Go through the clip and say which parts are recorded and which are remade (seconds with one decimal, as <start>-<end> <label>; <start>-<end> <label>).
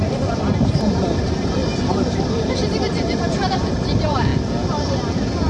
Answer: 0.0-1.6 remade; 1.6-2.5 recorded; 2.5-4.3 remade; 4.3-5.5 recorded